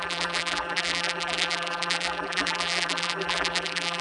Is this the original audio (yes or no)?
no